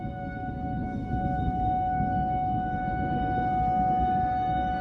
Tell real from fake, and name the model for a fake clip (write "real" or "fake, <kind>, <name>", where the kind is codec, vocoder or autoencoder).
fake, autoencoder, DAC-VAE